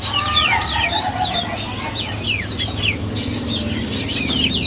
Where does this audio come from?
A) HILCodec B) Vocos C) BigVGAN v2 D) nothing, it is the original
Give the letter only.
D